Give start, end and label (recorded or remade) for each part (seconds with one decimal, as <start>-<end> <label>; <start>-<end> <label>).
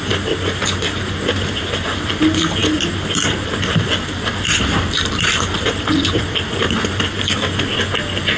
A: 0.0-2.6 recorded; 2.6-6.9 remade; 6.9-8.4 recorded